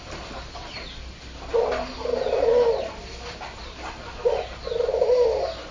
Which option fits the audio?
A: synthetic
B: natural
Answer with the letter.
B